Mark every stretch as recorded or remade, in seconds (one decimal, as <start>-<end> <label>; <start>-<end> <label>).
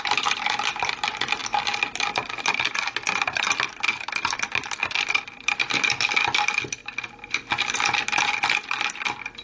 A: 0.0-9.4 recorded